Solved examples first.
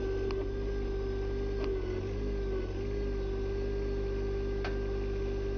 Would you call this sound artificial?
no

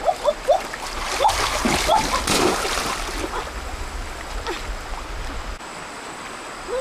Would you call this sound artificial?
no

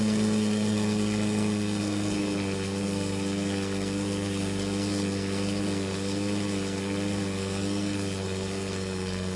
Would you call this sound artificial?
yes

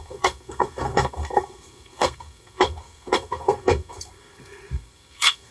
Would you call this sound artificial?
yes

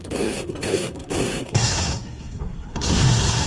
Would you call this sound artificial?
yes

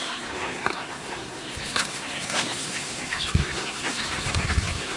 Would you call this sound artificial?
yes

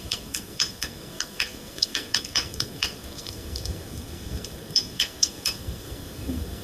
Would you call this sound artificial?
yes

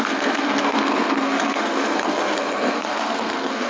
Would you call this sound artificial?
yes